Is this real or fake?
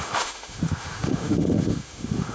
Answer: fake